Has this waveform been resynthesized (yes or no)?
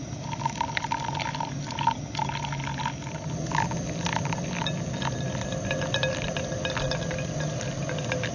no